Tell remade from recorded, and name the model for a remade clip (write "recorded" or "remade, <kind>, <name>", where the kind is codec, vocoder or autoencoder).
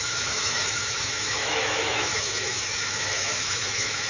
remade, autoencoder, DAC-VAE